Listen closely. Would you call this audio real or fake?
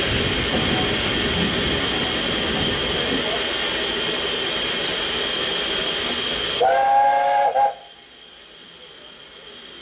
real